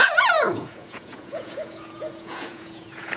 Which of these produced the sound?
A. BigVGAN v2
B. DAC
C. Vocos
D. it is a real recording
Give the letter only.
C